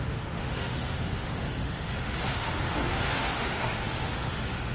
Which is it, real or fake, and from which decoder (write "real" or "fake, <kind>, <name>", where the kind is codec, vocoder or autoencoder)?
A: fake, autoencoder, DAC-VAE